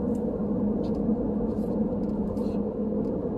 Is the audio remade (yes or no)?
no